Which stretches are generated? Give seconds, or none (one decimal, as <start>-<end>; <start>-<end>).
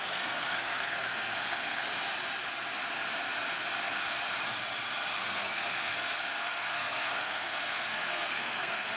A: 0.0-1.8; 5.2-9.0